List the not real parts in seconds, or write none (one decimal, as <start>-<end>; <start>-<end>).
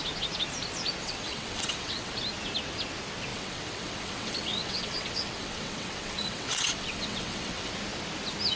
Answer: 1.0-2.1; 3.3-7.7